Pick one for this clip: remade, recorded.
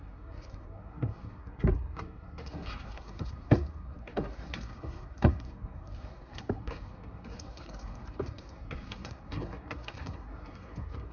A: remade